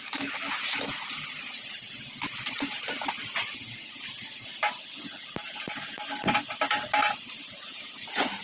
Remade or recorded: recorded